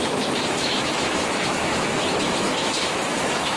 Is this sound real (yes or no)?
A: no